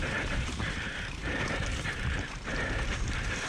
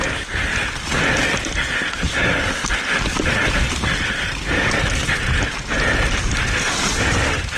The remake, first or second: first